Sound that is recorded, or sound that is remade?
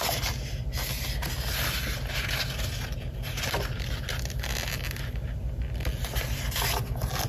recorded